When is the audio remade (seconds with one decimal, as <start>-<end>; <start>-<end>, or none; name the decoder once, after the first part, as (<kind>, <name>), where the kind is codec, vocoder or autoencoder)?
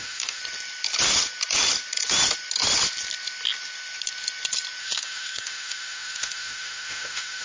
0.0-0.4 (autoencoder, DAC-VAE); 4.8-7.4